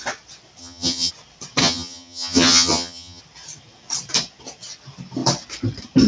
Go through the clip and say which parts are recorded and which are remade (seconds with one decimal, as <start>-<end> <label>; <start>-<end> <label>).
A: 0.0-0.6 recorded; 0.6-1.1 remade; 1.1-1.6 recorded; 1.6-3.2 remade; 3.2-6.1 recorded